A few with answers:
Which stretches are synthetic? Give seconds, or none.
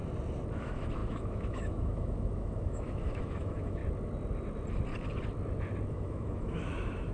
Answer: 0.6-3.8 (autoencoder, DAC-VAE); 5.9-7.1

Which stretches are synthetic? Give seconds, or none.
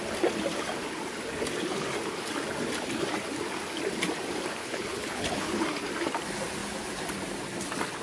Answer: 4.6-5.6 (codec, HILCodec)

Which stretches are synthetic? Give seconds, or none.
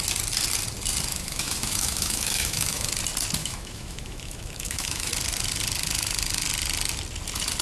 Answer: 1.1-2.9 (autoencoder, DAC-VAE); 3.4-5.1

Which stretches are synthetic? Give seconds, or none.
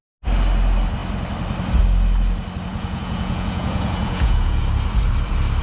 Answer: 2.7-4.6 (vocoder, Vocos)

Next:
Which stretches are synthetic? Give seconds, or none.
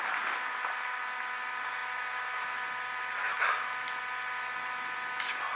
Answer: none